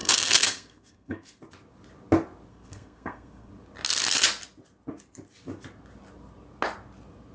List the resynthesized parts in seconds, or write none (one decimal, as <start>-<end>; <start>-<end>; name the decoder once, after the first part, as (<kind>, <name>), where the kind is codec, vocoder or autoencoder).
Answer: 0.0-1.4 (codec, SNAC); 2.5-3.5